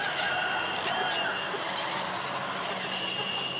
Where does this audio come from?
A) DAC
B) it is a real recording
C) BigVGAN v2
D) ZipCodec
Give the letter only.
B